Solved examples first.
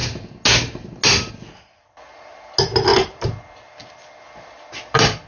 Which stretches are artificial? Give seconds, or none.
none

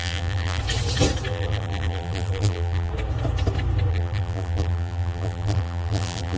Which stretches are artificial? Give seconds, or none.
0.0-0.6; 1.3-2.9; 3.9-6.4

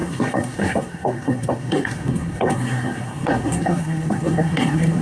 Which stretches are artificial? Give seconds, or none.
0.0-5.0